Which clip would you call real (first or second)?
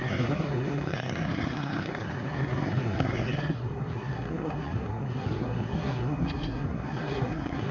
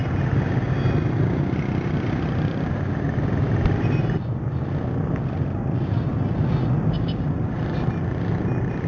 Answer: second